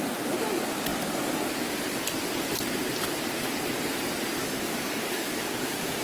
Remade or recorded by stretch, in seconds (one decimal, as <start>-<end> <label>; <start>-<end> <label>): 0.0-4.4 recorded; 4.4-6.0 remade